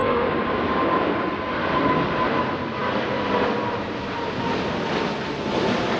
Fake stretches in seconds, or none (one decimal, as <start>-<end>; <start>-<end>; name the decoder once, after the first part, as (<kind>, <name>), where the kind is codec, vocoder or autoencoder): 0.0-1.3 (codec, DAC)